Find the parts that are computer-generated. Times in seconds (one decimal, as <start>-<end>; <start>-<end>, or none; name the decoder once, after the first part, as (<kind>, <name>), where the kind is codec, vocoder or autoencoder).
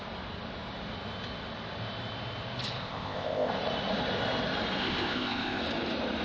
2.8-3.5 (codec, ZipCodec); 4.8-5.6